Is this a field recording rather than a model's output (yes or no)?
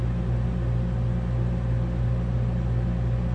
yes